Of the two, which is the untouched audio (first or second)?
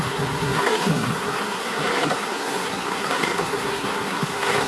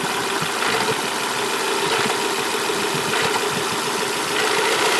second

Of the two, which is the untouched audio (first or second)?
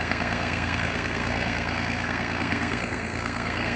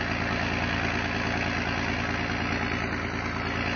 second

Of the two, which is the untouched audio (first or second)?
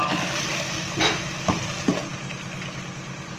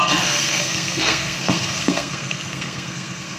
first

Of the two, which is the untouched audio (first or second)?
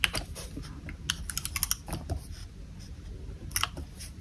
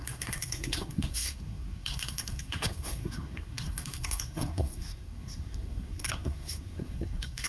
first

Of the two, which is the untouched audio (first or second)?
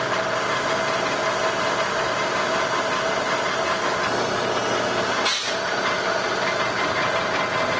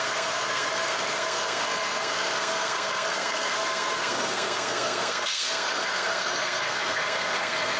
first